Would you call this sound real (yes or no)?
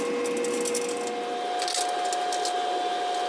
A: yes